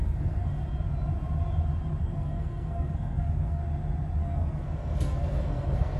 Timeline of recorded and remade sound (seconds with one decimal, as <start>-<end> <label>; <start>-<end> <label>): 0.0-0.6 remade; 0.6-2.0 recorded; 2.0-3.6 remade; 3.6-4.2 recorded; 4.2-6.0 remade